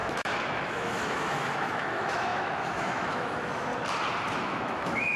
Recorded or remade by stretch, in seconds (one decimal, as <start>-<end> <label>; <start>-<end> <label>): 0.0-3.7 remade; 3.7-4.4 recorded; 4.4-5.2 remade